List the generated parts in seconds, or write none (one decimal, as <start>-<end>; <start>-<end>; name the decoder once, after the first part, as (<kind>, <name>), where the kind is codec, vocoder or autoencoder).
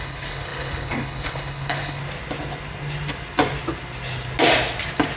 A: 0.0-2.0 (codec, HILCodec)